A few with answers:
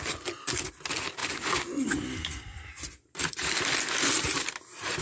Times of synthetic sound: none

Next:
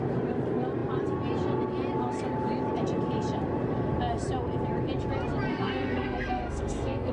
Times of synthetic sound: 5.5-7.1 (codec, SNAC)

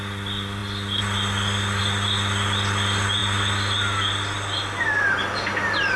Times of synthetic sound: none

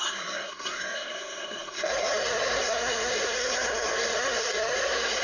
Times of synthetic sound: 0.0-5.2 (codec, SNAC)